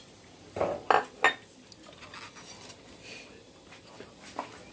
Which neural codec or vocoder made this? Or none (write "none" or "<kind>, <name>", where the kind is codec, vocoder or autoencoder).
none